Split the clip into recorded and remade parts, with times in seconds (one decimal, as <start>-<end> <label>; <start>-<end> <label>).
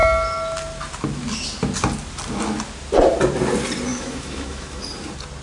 0.0-3.9 recorded; 3.9-4.8 remade; 4.8-5.4 recorded